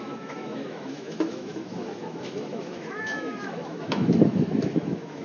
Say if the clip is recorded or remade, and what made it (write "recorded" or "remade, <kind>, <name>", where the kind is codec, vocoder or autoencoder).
remade, autoencoder, DAC-VAE